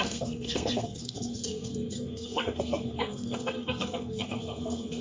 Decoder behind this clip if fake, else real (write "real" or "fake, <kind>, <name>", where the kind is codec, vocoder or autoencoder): fake, codec, SNAC